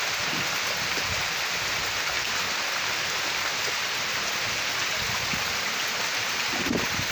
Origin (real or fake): real